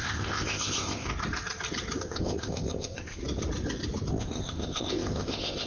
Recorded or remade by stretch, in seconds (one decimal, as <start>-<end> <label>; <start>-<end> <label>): 0.0-1.1 remade; 1.1-2.0 recorded; 2.0-3.2 remade; 3.2-4.1 recorded; 4.1-5.7 remade